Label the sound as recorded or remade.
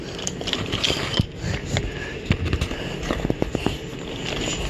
recorded